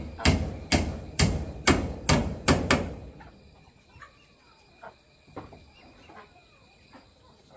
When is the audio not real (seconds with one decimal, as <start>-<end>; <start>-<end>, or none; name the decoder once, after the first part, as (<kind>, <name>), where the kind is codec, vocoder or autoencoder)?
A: none